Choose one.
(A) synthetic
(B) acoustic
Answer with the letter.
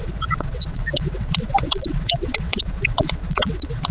A